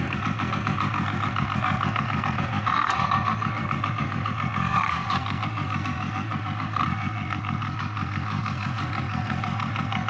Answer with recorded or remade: remade